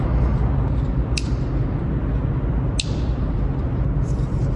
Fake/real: real